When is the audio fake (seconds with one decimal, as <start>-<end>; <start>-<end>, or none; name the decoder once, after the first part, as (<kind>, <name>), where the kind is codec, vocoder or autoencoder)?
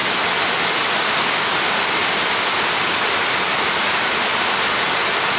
none